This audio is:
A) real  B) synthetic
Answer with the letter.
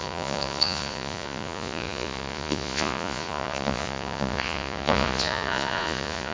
B